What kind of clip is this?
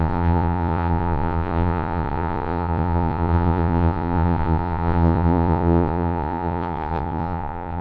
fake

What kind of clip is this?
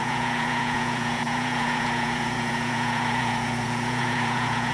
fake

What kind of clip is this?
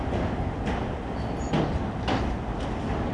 real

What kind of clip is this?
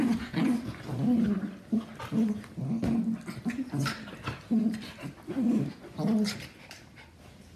real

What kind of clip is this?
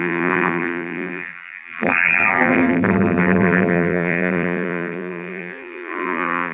fake